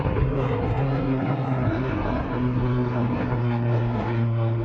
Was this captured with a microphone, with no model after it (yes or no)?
no